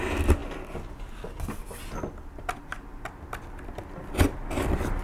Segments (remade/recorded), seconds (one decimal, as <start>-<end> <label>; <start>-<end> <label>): 0.0-5.0 recorded